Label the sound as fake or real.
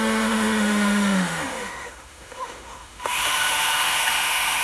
fake